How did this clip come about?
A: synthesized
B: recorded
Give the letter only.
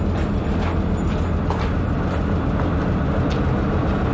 B